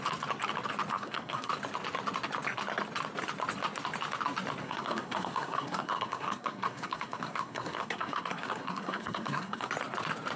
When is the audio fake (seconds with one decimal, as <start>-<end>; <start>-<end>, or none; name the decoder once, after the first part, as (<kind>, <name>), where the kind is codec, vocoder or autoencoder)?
0.9-1.5 (codec, SNAC); 4.6-9.7